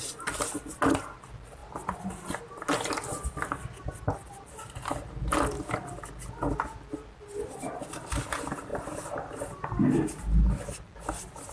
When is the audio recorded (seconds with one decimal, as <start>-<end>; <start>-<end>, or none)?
0.0-11.5